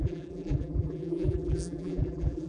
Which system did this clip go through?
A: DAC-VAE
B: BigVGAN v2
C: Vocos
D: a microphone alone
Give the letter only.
B